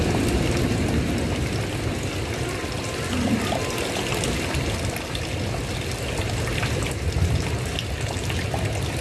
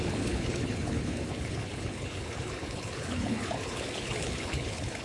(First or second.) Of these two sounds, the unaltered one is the first